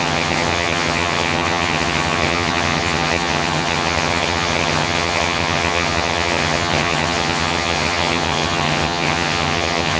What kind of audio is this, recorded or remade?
remade